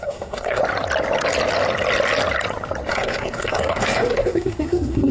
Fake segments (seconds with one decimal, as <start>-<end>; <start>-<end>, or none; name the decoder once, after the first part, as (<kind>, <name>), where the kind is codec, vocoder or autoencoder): 0.0-0.6 (codec, SNAC); 2.9-5.1